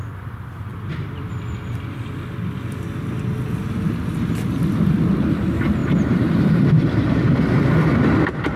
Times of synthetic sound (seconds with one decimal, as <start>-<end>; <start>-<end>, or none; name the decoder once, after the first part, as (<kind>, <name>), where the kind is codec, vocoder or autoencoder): 0.7-1.3 (vocoder, BigVGAN v2); 5.8-6.6